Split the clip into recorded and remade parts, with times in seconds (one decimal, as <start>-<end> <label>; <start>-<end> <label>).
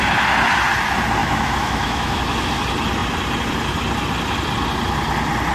0.0-1.2 recorded; 1.2-2.2 remade; 2.2-5.5 recorded